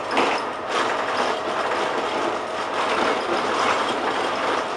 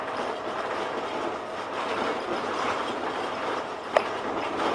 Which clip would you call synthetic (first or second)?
second